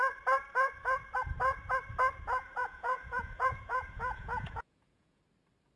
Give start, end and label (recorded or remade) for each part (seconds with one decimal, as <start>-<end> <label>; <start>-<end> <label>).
0.0-2.6 recorded; 2.6-5.2 remade; 5.2-5.8 recorded